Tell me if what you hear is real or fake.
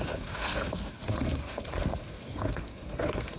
fake